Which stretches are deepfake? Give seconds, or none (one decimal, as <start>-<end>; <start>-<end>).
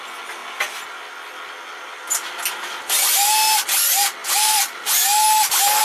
none